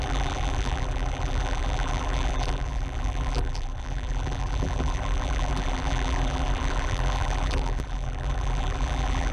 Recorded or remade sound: remade